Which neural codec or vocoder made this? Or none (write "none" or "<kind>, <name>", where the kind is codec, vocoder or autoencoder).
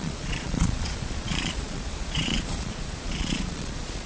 vocoder, Vocos